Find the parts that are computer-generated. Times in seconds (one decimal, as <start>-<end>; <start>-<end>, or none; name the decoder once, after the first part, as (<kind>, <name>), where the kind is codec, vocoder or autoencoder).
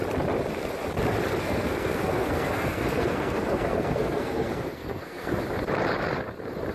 1.4-5.4 (codec, SNAC)